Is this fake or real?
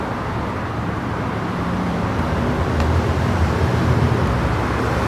fake